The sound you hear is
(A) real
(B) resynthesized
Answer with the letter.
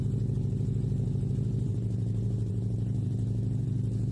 B